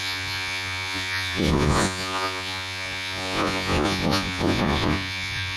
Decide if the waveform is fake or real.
fake